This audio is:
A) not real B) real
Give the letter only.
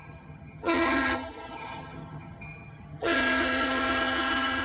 A